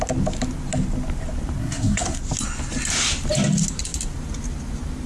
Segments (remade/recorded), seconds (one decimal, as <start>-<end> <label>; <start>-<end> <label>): 0.0-1.6 recorded; 1.6-2.2 remade; 2.2-5.1 recorded